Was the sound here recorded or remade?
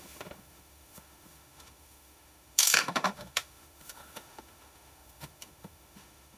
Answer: remade